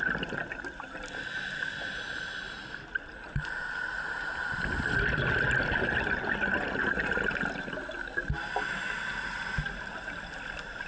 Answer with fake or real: real